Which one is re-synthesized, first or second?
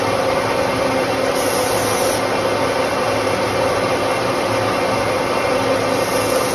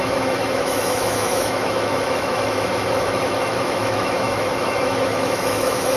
second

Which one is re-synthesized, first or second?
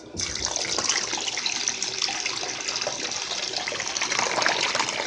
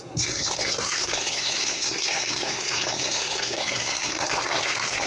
second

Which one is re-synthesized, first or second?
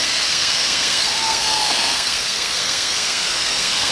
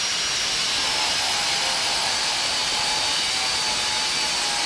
first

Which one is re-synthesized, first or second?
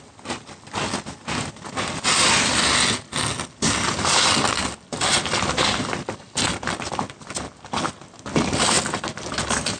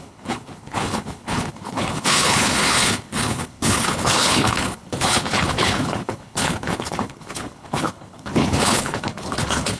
second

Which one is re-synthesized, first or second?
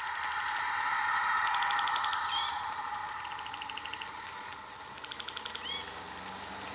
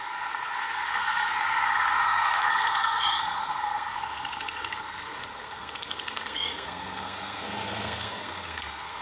second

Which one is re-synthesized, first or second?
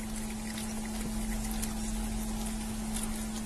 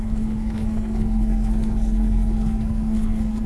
second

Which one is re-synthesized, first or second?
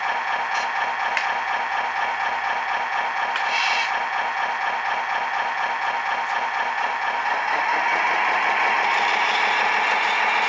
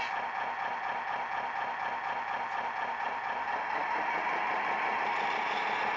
second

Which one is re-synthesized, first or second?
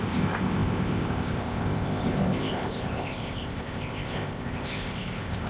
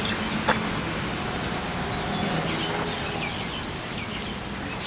first